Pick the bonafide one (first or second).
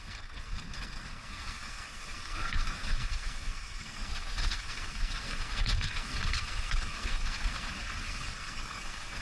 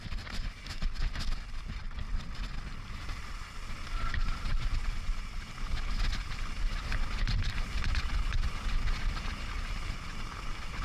second